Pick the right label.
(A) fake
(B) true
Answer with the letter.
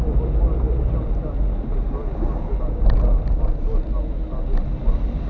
B